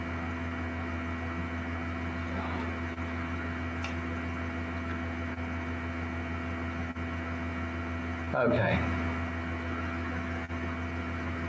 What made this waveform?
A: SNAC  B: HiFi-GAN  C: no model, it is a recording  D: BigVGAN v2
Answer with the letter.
C